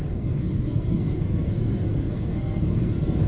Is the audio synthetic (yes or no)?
yes